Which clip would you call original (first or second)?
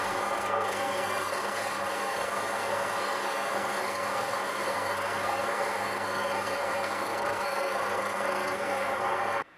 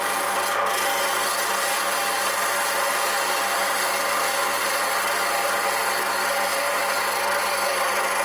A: second